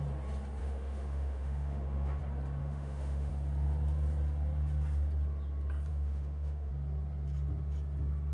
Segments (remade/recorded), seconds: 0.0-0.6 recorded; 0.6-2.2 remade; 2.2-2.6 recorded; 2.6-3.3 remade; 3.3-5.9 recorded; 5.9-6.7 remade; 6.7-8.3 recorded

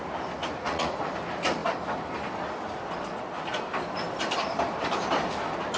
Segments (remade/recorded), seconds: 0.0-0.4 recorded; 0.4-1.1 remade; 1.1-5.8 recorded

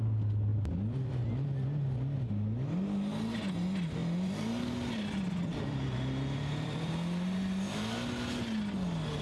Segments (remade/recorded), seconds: 0.0-0.5 recorded; 0.5-1.1 remade; 1.1-4.0 recorded; 4.0-6.9 remade; 6.9-9.2 recorded

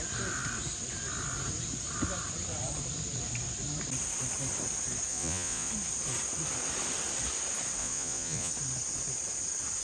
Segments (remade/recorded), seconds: 0.0-5.1 recorded; 5.1-5.7 remade; 5.7-7.8 recorded; 7.8-8.5 remade; 8.5-9.8 recorded

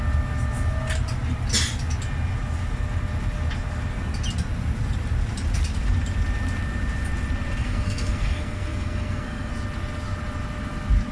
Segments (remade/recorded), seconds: 0.0-7.6 recorded; 7.6-9.5 remade; 9.5-11.1 recorded